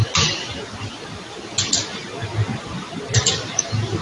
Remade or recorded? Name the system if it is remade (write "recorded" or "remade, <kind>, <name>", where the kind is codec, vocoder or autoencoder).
recorded